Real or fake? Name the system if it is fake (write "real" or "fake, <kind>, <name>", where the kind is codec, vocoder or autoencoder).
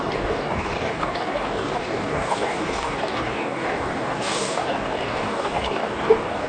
fake, codec, DAC